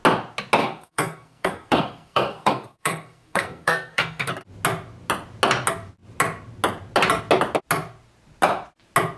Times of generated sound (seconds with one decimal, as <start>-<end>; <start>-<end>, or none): 0.6-4.3